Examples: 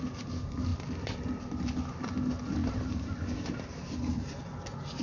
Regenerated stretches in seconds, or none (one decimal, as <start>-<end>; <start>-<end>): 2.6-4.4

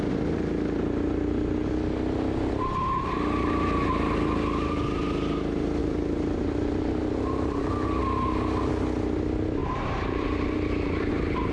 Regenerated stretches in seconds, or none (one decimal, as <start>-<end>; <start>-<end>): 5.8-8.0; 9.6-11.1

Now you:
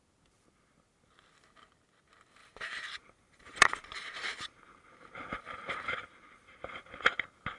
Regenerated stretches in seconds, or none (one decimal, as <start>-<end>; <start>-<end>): 2.4-7.0

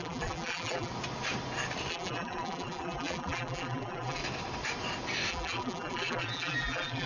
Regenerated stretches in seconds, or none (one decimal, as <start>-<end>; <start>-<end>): 0.0-0.9; 1.9-4.2; 5.3-7.1